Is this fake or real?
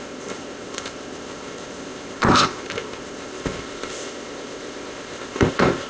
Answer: fake